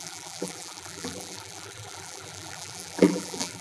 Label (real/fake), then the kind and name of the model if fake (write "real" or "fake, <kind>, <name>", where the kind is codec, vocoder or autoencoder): fake, vocoder, BigVGAN v2